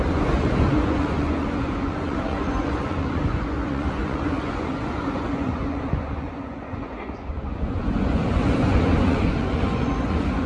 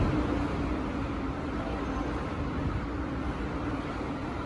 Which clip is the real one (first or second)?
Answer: second